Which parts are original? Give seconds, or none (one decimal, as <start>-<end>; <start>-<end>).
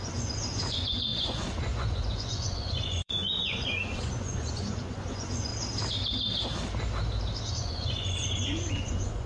5.5-7.5